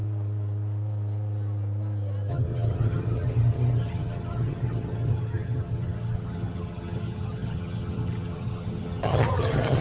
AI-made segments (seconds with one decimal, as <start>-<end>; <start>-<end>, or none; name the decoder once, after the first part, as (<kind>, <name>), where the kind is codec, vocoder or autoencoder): 2.3-9.8 (vocoder, HiFi-GAN)